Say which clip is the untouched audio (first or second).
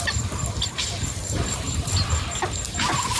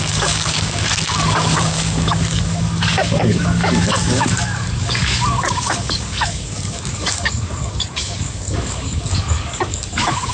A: first